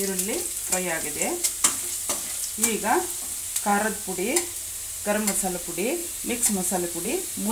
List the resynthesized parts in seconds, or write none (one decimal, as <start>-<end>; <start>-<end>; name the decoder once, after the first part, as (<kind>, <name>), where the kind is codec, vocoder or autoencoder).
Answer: 6.0-7.5 (vocoder, BigVGAN v2)